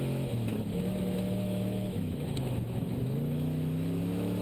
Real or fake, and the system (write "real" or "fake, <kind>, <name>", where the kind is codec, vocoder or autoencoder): fake, autoencoder, DAC-VAE